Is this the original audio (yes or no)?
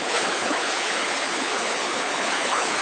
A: no